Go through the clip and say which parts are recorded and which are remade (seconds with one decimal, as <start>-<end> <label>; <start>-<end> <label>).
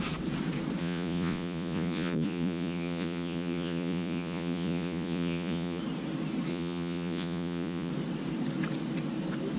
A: 0.0-0.8 recorded; 0.8-5.8 remade; 5.8-6.5 recorded; 6.5-7.9 remade; 7.9-9.6 recorded